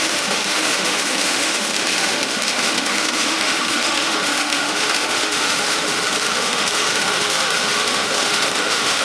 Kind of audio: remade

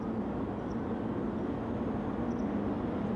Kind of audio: recorded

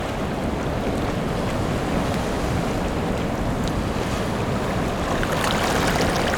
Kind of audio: recorded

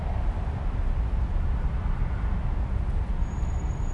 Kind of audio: recorded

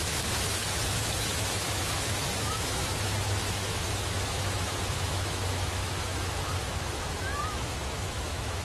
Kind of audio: remade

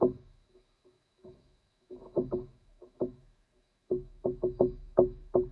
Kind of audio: remade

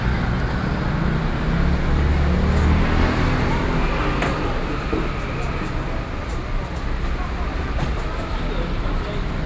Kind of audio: recorded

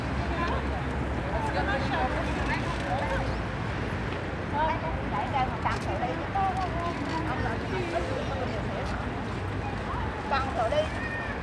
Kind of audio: recorded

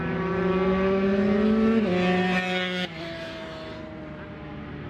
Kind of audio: recorded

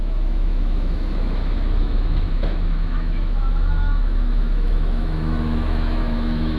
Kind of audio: remade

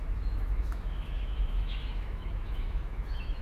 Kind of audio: remade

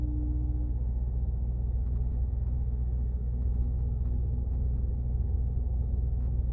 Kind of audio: remade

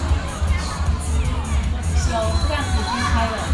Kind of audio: recorded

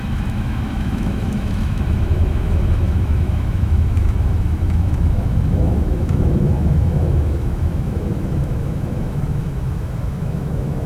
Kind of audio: remade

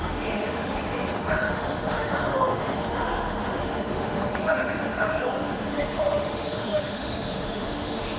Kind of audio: remade